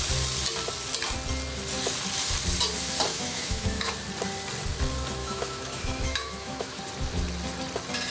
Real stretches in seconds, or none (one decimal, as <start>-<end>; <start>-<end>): 0.0-3.1; 3.9-5.2; 6.8-8.1